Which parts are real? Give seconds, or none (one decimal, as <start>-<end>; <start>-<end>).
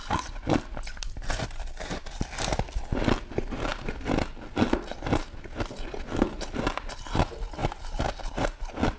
0.0-9.0